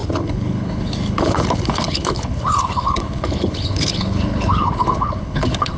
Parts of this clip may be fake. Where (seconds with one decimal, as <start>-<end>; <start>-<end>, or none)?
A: 0.0-5.8